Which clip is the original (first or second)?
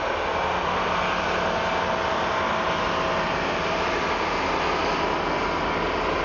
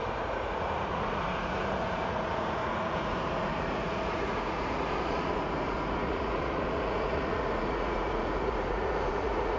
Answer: first